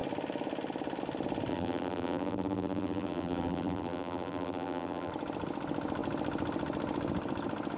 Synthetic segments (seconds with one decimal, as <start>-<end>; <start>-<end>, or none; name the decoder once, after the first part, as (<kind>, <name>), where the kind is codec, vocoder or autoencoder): 1.5-5.1 (vocoder, BigVGAN v2)